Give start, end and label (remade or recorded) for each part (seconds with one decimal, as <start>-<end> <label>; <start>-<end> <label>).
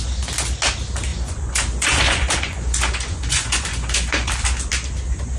0.0-1.1 recorded; 1.1-4.3 remade; 4.3-5.4 recorded